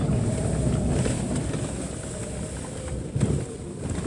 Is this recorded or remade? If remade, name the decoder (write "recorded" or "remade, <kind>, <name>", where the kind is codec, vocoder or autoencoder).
recorded